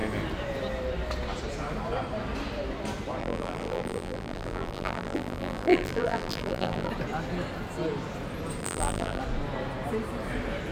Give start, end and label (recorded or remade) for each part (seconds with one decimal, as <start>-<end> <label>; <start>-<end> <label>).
0.0-3.2 recorded; 3.2-6.9 remade; 6.9-8.6 recorded; 8.6-9.2 remade; 9.2-10.7 recorded